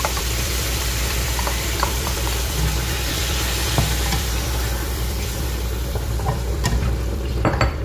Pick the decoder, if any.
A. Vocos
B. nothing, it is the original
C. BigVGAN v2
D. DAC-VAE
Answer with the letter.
C